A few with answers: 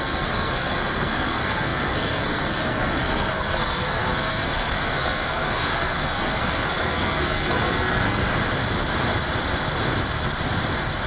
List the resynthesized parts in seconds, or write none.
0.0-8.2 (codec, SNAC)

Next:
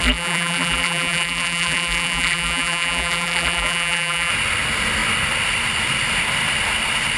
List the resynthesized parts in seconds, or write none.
0.0-4.3 (vocoder, BigVGAN v2)